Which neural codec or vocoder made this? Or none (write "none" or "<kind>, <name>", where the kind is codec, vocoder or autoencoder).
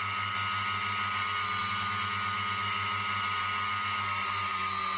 none